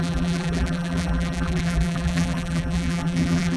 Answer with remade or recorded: remade